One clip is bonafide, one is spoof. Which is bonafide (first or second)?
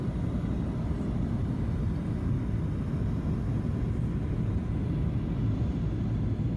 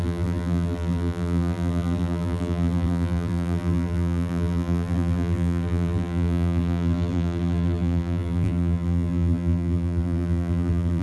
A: first